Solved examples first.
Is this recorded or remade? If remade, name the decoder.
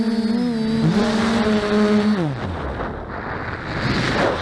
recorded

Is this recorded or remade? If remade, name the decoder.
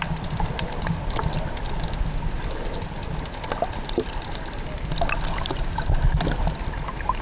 recorded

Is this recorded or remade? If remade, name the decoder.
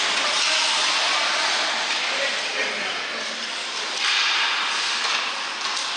recorded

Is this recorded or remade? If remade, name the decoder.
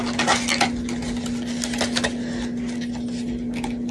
recorded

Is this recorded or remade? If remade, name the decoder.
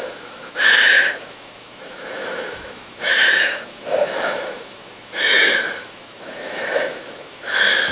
remade, autoencoder, DAC-VAE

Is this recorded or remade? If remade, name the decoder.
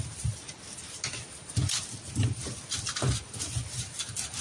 recorded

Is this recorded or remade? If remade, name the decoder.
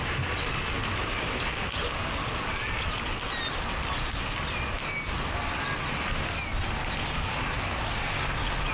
recorded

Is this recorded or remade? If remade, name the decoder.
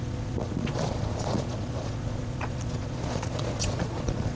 remade, vocoder, Vocos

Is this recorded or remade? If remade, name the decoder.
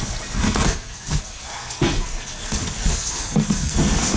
remade, codec, SNAC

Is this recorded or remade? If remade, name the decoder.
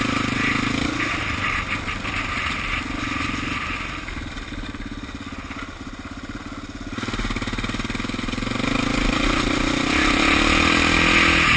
recorded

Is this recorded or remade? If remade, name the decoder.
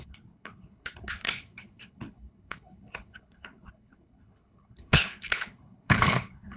remade, codec, HILCodec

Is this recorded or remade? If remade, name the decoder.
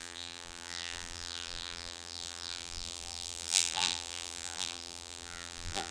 remade, vocoder, BigVGAN v2